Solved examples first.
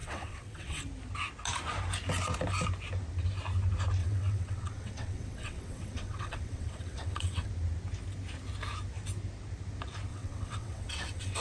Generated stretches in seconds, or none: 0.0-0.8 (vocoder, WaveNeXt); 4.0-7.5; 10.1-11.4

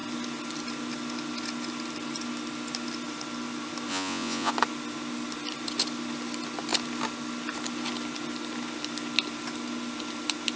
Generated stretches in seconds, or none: 3.9-4.5 (vocoder, Vocos)

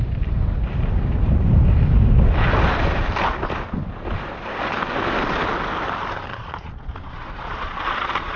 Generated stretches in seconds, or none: 6.3-8.4 (vocoder, Vocos)

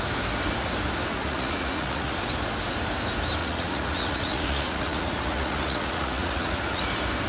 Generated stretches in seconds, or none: 1.1-2.1 (vocoder, Vocos); 3.4-6.8

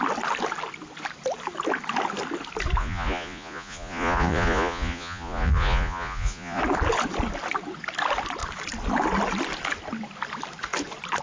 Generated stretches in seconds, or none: 2.8-6.6 (vocoder, Vocos)

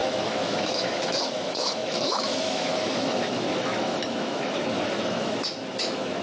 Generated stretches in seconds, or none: 0.0-6.2 (autoencoder, DAC-VAE)

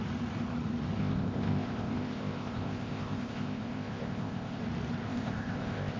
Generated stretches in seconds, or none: 1.0-4.6 (codec, ZipCodec); 5.0-6.0